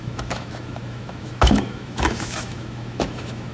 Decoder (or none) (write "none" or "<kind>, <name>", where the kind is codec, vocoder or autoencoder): autoencoder, DAC-VAE